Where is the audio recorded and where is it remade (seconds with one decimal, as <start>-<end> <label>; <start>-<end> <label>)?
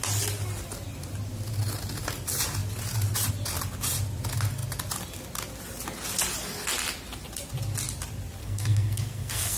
0.0-8.4 recorded; 8.4-9.6 remade